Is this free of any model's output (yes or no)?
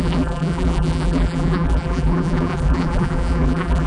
no